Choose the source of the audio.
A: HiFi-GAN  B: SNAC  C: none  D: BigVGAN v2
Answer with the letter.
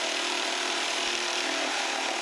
D